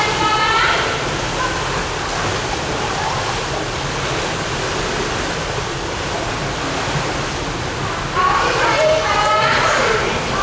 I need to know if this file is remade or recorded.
recorded